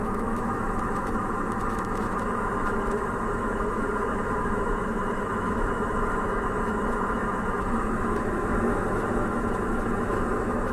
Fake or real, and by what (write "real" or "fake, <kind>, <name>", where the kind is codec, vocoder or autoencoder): fake, autoencoder, DAC-VAE